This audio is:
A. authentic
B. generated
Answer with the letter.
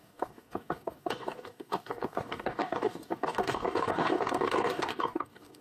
B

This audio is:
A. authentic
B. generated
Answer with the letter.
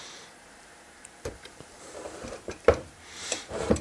B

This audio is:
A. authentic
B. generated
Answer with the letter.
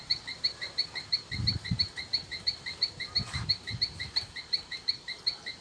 B